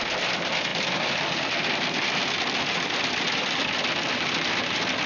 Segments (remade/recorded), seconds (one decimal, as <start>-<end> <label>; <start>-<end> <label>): 0.0-5.1 recorded